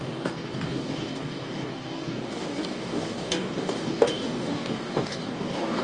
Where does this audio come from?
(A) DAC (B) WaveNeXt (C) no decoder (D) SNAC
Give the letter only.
A